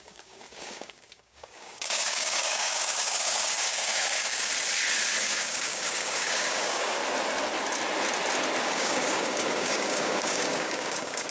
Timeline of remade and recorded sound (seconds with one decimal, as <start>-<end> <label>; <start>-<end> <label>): 0.0-4.5 remade; 4.5-5.2 recorded; 5.2-7.0 remade; 7.0-8.6 recorded; 8.6-11.3 remade